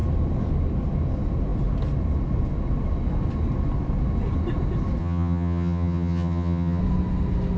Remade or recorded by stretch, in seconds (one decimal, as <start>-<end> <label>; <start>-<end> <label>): 0.0-5.0 recorded; 5.0-6.8 remade; 6.8-7.6 recorded

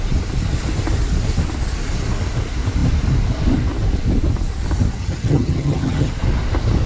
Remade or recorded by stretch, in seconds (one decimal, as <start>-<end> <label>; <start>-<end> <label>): 0.0-5.0 recorded; 5.0-6.1 remade; 6.1-6.9 recorded